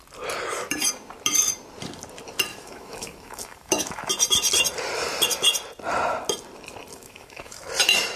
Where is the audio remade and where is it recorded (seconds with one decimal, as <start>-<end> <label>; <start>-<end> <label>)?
0.0-2.5 recorded; 2.5-4.1 remade; 4.1-6.9 recorded; 6.9-7.7 remade; 7.7-8.2 recorded